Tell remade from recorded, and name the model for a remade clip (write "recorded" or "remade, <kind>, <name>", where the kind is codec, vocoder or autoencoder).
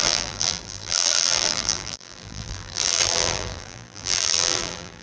remade, vocoder, BigVGAN v2